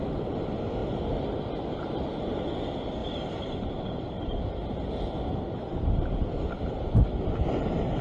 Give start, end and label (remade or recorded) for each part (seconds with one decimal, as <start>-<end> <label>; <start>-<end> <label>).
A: 0.0-8.0 recorded